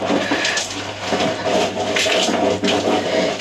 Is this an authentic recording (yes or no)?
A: yes